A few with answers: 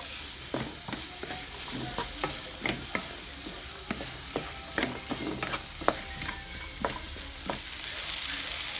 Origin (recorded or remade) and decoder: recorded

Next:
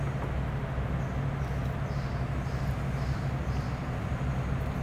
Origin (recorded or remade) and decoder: recorded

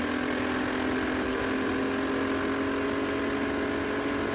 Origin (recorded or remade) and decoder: recorded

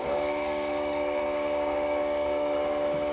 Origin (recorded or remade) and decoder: remade, codec, DAC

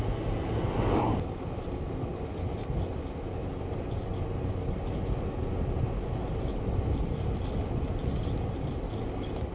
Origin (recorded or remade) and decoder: recorded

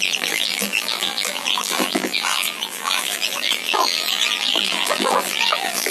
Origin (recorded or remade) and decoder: remade, vocoder, BigVGAN v2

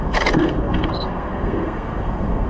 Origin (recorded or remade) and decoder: remade, codec, SNAC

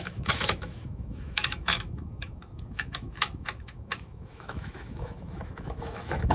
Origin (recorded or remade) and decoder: remade, autoencoder, DAC-VAE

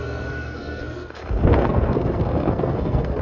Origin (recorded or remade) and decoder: remade, codec, SNAC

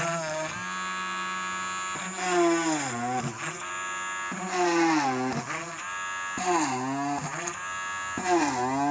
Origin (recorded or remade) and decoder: recorded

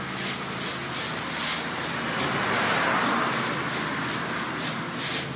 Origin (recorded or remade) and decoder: recorded